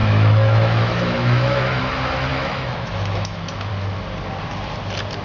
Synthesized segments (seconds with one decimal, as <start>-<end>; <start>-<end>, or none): 0.0-1.8; 2.3-3.7